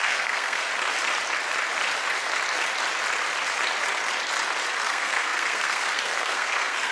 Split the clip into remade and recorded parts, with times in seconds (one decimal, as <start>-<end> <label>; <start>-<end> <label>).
0.0-0.7 remade; 0.7-4.8 recorded; 4.8-6.9 remade